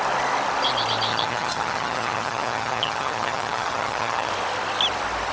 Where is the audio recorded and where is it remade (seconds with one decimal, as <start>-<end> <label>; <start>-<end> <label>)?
0.0-1.1 recorded; 1.1-4.3 remade; 4.3-5.3 recorded